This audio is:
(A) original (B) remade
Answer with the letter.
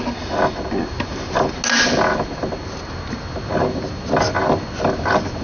A